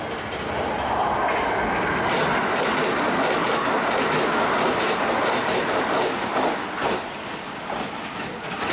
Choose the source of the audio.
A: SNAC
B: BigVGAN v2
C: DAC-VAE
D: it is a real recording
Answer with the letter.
D